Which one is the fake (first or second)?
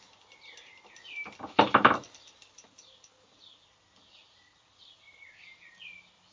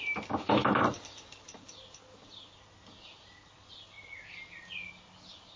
first